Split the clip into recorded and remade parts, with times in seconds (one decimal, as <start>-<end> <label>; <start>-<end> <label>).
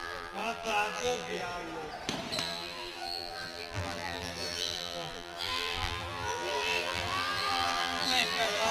0.0-1.4 remade; 1.4-2.4 recorded; 2.4-8.7 remade